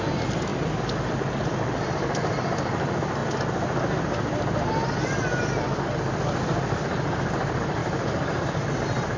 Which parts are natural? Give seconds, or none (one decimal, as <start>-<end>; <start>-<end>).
0.5-1.4; 3.2-5.4; 7.8-8.4